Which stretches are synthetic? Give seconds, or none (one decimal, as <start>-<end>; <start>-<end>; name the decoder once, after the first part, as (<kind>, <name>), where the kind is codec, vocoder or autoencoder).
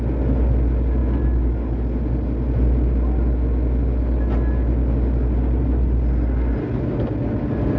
none